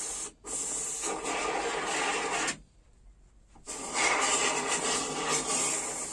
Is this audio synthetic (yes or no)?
no